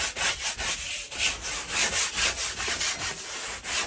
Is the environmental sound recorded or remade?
recorded